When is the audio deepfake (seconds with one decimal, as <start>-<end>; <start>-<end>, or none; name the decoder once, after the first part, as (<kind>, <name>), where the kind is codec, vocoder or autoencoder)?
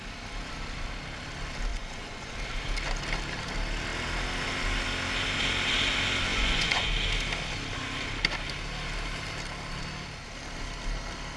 1.7-2.3 (vocoder, Vocos); 6.3-6.9